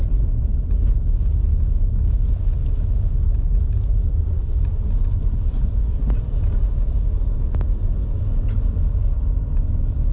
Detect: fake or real real